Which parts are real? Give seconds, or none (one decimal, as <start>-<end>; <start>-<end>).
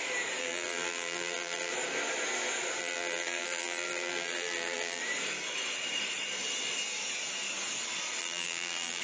0.0-0.4; 1.7-2.8; 5.0-8.2